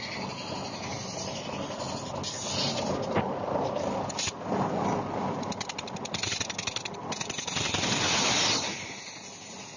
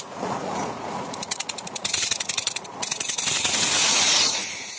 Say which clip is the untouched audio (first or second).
first